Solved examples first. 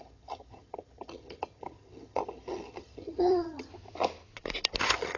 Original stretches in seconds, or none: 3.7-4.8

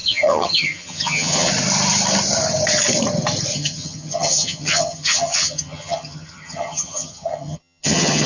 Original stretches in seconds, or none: 1.5-3.5

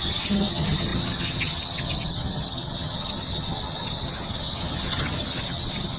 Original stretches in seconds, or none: none

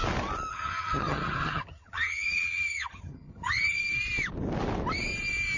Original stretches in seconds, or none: 0.0-0.5; 3.8-5.6

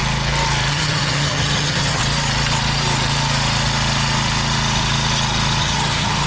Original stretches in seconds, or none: 0.0-0.7; 2.0-5.6

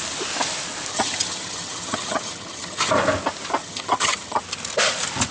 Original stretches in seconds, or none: 0.0-0.9; 2.9-3.6; 4.4-5.3